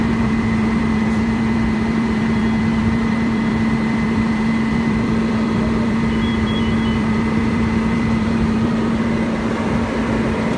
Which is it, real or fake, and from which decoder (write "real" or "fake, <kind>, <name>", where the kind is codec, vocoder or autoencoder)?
fake, vocoder, BigVGAN v2